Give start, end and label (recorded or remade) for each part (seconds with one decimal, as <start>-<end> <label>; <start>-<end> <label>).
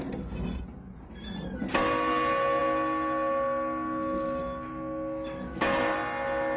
0.0-6.6 recorded